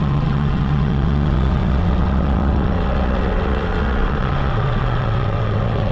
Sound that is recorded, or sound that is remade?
remade